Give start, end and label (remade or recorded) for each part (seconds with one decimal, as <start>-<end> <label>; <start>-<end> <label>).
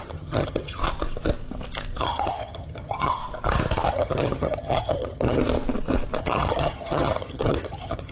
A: 0.0-0.8 remade; 0.8-2.0 recorded; 2.0-3.2 remade; 3.2-3.9 recorded; 3.9-5.4 remade; 5.4-6.2 recorded; 6.2-8.1 remade